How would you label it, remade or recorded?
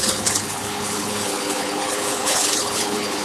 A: remade